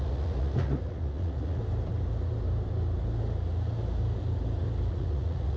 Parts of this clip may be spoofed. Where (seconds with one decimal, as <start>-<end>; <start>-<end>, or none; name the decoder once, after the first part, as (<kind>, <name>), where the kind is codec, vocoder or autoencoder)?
0.0-1.6 (vocoder, Vocos); 4.9-5.6

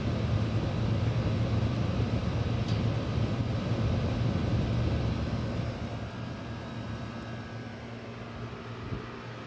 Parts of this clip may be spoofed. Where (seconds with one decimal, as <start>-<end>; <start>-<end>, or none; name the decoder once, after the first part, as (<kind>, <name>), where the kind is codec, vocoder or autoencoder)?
none

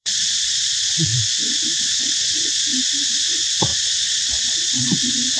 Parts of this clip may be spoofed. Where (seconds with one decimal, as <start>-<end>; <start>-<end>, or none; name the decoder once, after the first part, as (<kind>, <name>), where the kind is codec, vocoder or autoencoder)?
0.0-1.1 (vocoder, Vocos); 1.8-2.7; 3.3-5.4